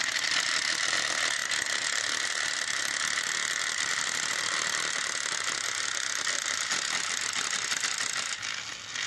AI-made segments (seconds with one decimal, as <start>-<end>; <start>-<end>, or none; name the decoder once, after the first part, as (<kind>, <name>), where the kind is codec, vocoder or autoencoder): none